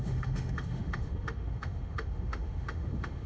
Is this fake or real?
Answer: fake